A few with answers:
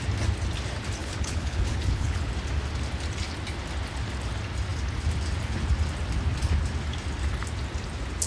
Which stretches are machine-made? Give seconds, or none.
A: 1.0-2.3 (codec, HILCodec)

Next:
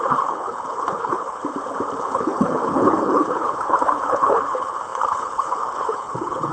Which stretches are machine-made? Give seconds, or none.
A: 0.0-1.4 (codec, HILCodec); 2.0-6.5